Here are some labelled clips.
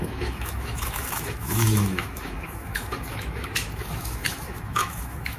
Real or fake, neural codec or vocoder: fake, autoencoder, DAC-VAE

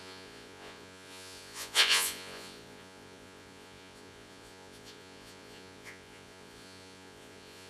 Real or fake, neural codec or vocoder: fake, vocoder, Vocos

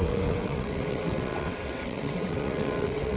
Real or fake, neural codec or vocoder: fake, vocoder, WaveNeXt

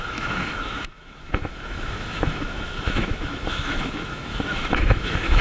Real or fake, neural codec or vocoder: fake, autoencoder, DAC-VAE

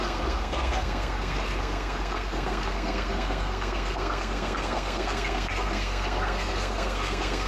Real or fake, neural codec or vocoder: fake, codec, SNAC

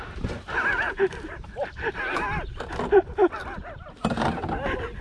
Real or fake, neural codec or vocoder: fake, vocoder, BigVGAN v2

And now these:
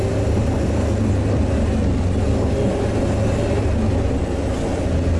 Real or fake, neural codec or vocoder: real